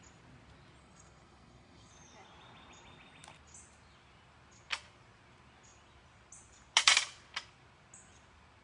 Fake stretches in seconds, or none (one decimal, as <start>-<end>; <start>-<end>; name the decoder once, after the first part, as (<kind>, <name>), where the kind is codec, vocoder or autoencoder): 0.8-1.9 (codec, SNAC)

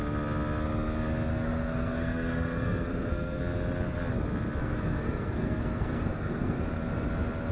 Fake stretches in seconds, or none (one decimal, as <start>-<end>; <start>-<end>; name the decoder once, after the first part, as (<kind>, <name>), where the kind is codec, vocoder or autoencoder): 1.3-3.4 (codec, SNAC); 4.6-6.6